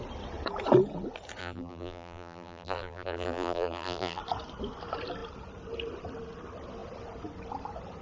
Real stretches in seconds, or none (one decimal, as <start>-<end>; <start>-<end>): 0.0-1.4; 4.2-8.0